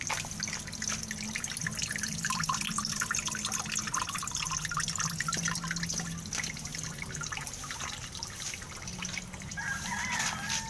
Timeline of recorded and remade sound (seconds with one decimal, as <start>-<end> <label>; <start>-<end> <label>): 0.0-1.8 recorded; 1.8-2.4 remade; 2.4-6.7 recorded; 6.7-8.5 remade; 8.5-8.9 recorded; 8.9-9.9 remade; 9.9-10.7 recorded